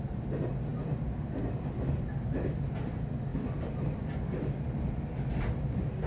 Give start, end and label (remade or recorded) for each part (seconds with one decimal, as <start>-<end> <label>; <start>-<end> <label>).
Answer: 0.0-6.1 recorded